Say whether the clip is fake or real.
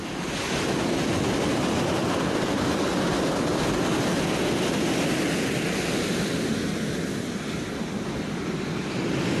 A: real